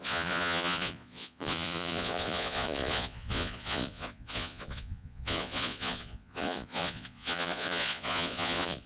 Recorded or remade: remade